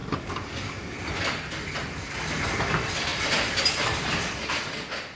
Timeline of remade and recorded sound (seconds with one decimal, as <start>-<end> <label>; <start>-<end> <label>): 0.0-1.0 remade; 1.0-3.1 recorded; 3.1-4.5 remade; 4.5-5.2 recorded